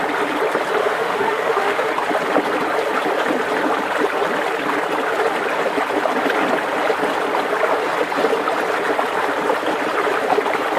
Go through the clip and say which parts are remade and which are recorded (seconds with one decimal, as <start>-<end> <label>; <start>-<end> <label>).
0.0-0.8 recorded; 0.8-1.9 remade; 1.9-10.8 recorded